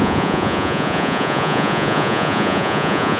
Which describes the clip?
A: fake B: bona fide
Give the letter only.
A